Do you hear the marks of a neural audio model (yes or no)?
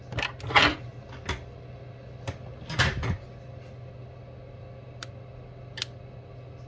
no